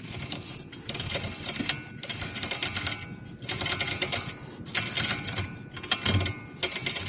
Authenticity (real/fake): real